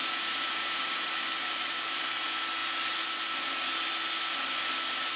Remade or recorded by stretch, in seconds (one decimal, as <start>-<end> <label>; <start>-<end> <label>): 0.0-5.2 recorded